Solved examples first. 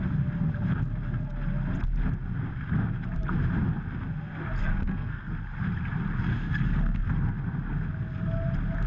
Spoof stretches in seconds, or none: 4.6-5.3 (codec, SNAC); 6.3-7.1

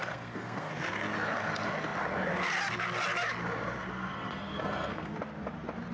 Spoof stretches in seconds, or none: 0.0-0.7 (codec, SNAC); 3.9-5.1

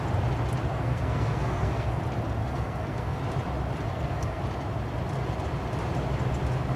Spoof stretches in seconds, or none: 0.7-2.0 (codec, SNAC); 2.4-3.2; 3.9-4.4

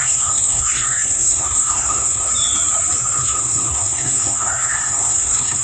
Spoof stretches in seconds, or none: 0.0-2.3 (codec, SNAC); 3.0-5.6

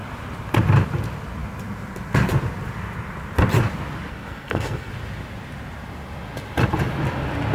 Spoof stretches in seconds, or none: 4.1-4.9 (codec, SNAC)